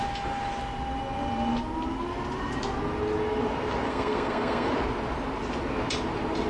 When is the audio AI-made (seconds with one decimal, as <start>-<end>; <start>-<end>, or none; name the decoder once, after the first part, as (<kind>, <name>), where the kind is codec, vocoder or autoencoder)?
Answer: 3.9-4.7 (codec, SNAC)